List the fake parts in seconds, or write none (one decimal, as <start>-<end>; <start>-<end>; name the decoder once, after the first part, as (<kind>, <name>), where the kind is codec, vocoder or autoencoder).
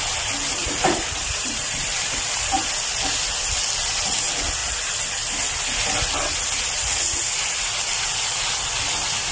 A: 0.6-2.6 (vocoder, BigVGAN v2)